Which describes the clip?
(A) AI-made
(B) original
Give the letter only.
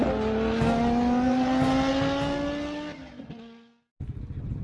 B